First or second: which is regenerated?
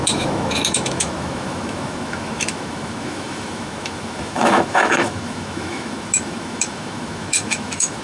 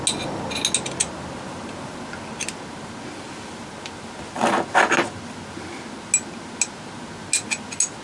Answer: first